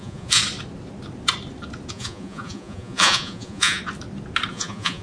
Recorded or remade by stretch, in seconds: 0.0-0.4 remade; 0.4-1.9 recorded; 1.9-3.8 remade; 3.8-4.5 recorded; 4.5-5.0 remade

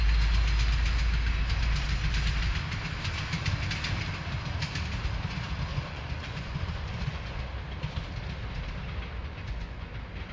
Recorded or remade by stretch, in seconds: 0.0-5.7 recorded; 5.7-7.4 remade; 7.4-9.2 recorded; 9.2-9.9 remade; 9.9-10.3 recorded

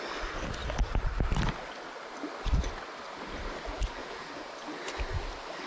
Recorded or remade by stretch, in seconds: 0.0-4.0 recorded; 4.0-4.5 remade; 4.5-5.7 recorded

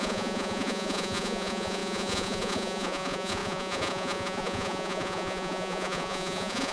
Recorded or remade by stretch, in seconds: 0.0-6.7 remade

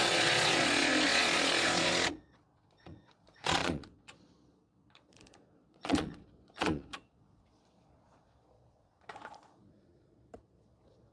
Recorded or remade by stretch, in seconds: 0.0-11.1 remade

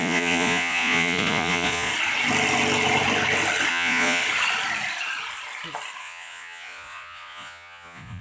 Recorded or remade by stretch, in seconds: 0.0-1.9 remade; 1.9-3.7 recorded; 3.7-4.2 remade; 4.2-6.0 recorded; 6.0-8.2 remade

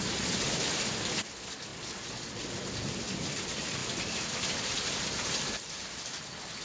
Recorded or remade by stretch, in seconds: 0.0-6.6 recorded

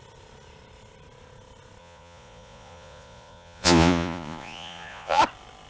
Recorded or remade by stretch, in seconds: 0.0-1.8 recorded; 1.8-5.2 remade; 5.2-5.7 recorded